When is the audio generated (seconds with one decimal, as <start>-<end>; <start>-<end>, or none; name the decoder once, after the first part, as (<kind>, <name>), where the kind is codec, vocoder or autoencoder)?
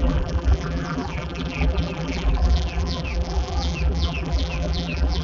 0.0-5.2 (vocoder, BigVGAN v2)